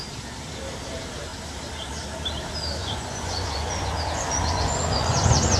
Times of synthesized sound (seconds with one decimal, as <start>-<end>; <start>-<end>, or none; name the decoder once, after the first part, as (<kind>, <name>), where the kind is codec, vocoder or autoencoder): 2.8-5.6 (vocoder, Vocos)